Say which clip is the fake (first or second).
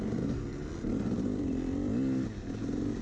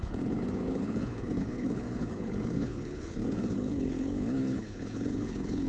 second